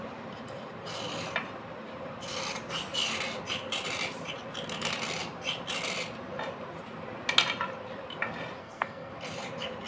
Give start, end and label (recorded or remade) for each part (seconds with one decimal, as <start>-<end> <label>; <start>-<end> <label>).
0.0-8.6 recorded; 8.6-9.1 remade; 9.1-9.9 recorded